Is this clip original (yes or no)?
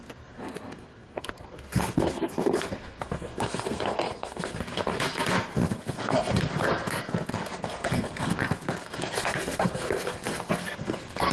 no